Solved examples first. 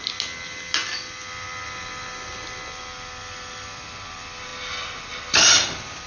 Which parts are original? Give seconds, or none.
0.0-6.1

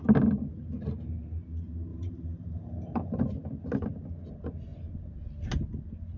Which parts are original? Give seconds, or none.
0.0-1.9; 3.2-6.2

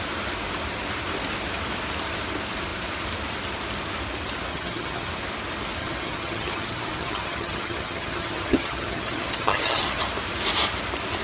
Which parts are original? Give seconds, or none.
0.0-4.5; 5.1-5.8; 10.0-11.2

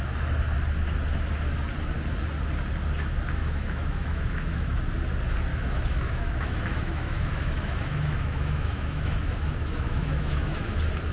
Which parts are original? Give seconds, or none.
0.0-3.4; 4.8-5.5; 10.7-11.1

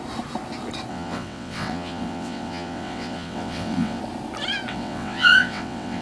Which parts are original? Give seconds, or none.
0.0-0.9; 4.0-4.7

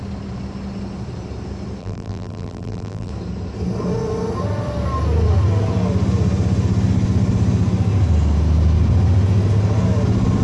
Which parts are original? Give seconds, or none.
0.0-1.8; 3.1-10.4